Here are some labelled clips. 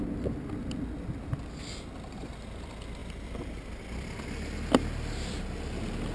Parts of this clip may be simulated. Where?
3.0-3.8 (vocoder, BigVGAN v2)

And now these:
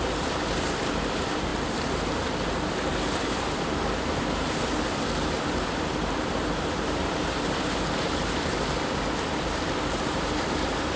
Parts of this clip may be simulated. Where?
0.0-1.5 (vocoder, BigVGAN v2); 3.1-11.0

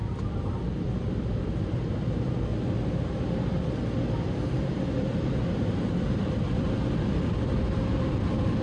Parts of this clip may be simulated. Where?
0.0-2.5 (vocoder, BigVGAN v2); 4.3-8.6

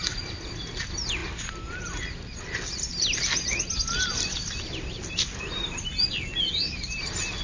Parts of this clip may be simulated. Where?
0.0-1.2 (vocoder, BigVGAN v2); 5.1-7.4